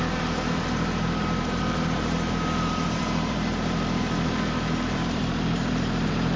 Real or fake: fake